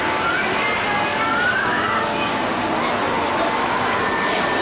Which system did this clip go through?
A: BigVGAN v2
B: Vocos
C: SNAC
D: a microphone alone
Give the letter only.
D